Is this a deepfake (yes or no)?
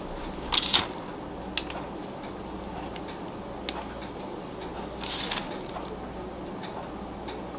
no